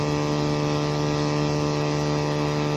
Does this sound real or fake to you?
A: real